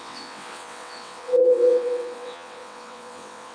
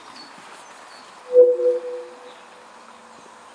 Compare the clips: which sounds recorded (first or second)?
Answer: second